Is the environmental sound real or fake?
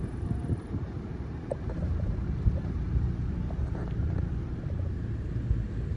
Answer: fake